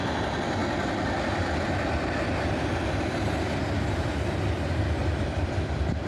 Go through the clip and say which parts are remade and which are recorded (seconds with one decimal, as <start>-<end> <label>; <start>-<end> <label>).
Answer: 0.0-5.0 recorded; 5.0-6.1 remade